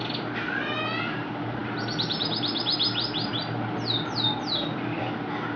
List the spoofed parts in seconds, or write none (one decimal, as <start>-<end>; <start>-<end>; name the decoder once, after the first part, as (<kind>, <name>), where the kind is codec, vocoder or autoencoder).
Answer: none